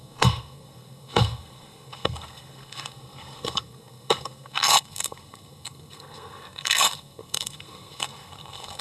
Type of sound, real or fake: fake